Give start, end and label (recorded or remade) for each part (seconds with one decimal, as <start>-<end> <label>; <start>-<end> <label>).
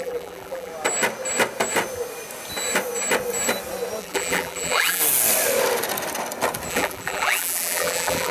0.0-0.7 remade; 0.7-4.0 recorded; 4.0-5.0 remade; 5.0-6.7 recorded; 6.7-8.3 remade